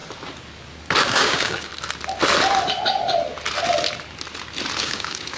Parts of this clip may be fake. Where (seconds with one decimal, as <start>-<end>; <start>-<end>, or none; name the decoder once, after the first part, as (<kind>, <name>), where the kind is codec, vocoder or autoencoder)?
1.0-1.7 (codec, DAC); 4.8-5.4